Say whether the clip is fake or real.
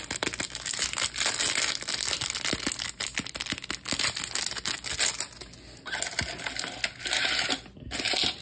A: real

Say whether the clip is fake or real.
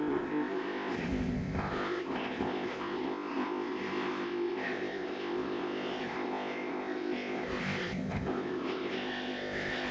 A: fake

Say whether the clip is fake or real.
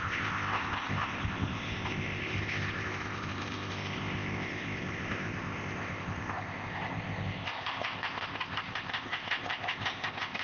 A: fake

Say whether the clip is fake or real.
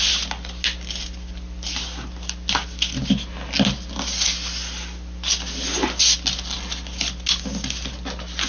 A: real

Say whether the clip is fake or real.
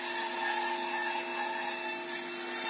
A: real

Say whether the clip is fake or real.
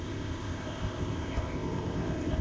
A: fake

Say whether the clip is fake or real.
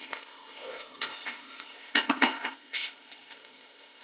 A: fake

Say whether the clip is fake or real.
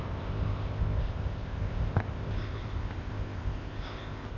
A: fake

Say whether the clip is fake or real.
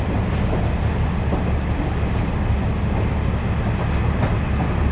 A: real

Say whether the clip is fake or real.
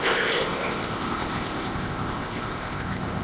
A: fake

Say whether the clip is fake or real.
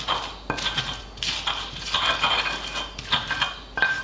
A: real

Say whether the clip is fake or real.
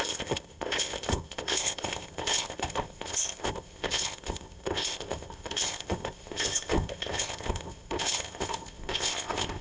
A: fake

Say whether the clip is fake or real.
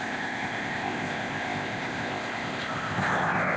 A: fake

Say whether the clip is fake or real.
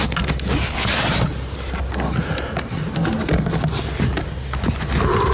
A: real